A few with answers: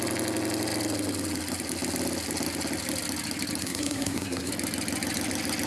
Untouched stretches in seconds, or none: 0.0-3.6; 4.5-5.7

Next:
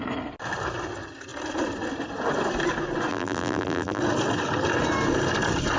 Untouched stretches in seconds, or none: 0.0-3.1; 4.0-5.8

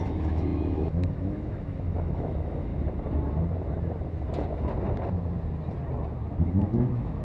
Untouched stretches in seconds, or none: 2.7-6.4

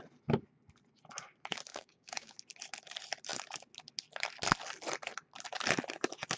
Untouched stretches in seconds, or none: 0.0-1.7; 2.3-6.4

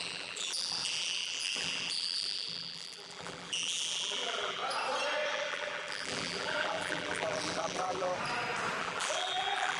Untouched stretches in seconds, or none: 4.6-5.3; 8.1-8.8